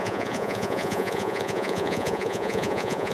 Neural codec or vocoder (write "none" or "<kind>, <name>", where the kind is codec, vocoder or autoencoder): vocoder, Vocos